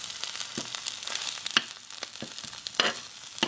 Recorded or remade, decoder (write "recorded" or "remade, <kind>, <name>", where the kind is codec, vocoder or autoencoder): recorded